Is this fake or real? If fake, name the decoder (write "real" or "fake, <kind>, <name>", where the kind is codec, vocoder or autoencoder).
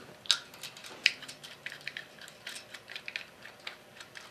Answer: real